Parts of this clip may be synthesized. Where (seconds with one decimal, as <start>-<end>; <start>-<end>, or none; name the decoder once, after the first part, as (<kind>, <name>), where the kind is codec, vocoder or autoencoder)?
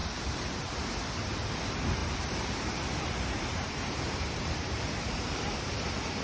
0.0-1.5 (vocoder, BigVGAN v2); 2.0-5.7